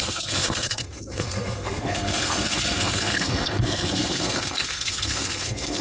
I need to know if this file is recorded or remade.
remade